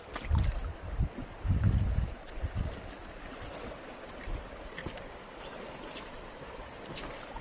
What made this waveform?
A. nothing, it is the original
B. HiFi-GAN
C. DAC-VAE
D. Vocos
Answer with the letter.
A